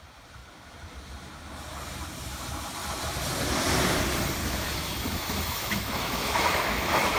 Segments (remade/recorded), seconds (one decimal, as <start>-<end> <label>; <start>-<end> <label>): 0.0-4.4 recorded; 4.4-7.2 remade